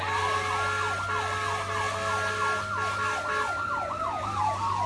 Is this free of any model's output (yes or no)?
yes